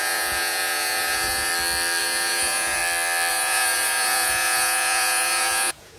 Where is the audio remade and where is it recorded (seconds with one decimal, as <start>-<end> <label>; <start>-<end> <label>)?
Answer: 0.0-1.5 remade; 1.5-2.0 recorded; 2.0-2.8 remade; 2.8-3.3 recorded; 3.3-6.0 remade